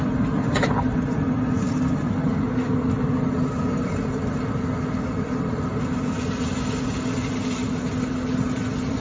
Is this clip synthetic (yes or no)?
no